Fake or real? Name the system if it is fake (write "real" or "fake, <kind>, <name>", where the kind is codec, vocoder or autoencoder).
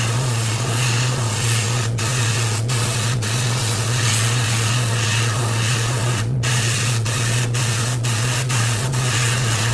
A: fake, vocoder, Vocos